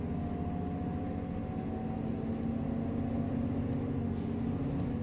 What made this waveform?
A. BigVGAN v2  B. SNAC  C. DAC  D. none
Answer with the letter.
D